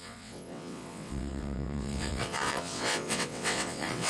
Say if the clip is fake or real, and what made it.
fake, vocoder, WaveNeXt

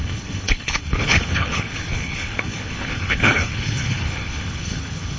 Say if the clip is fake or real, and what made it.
fake, codec, HILCodec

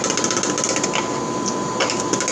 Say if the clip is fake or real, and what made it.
real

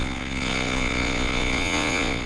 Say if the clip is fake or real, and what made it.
fake, vocoder, Vocos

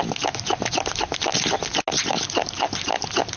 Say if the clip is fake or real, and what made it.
real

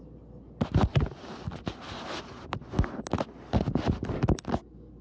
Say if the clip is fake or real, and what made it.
real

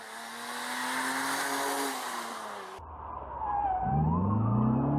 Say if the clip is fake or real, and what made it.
real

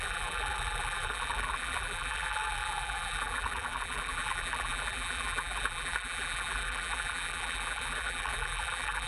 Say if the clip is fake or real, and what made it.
fake, vocoder, BigVGAN v2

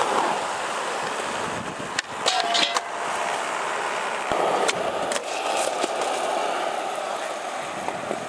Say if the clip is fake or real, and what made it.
real